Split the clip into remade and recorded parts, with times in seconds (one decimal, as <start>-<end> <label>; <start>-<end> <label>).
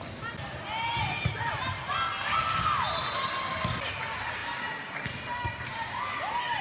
0.0-6.6 recorded